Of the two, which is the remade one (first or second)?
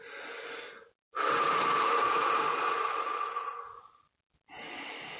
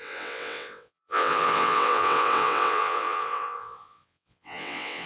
second